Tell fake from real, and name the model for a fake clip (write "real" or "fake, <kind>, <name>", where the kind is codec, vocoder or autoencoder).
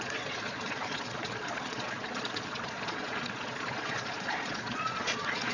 fake, vocoder, Vocos